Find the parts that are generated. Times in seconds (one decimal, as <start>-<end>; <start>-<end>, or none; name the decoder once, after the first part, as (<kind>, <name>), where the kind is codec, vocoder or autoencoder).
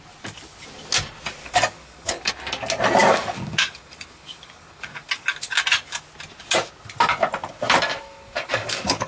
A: 1.4-2.3 (codec, DAC); 3.0-5.6; 8.0-9.1